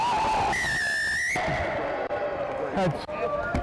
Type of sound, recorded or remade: recorded